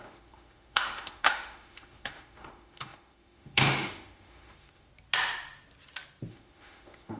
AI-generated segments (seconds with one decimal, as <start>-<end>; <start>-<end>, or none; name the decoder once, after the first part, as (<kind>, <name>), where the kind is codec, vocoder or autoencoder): 0.0-4.9 (autoencoder, DAC-VAE); 6.3-7.2